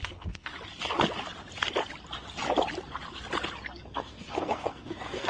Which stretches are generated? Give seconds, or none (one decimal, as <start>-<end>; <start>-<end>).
0.0-0.5; 3.7-5.3